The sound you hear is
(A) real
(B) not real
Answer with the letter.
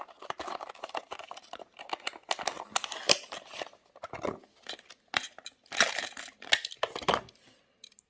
A